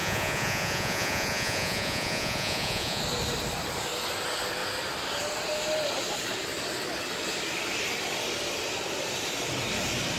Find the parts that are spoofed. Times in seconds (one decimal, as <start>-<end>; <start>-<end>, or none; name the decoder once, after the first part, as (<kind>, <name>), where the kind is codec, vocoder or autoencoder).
0.0-3.0 (vocoder, Vocos)